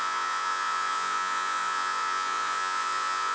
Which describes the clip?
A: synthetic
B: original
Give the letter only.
A